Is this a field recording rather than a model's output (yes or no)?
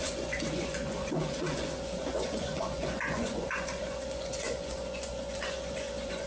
no